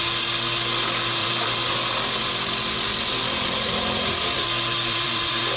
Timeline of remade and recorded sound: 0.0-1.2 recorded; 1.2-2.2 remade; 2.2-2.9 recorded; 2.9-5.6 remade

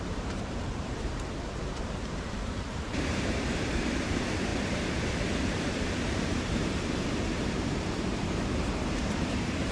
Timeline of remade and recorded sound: 0.0-9.7 remade